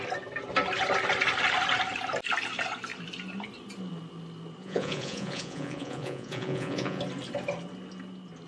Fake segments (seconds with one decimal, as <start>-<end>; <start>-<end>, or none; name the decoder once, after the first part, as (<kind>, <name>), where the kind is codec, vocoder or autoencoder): 4.6-7.0 (vocoder, Vocos)